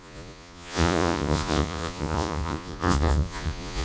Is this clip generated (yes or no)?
yes